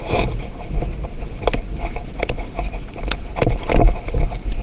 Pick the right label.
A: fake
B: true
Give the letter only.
B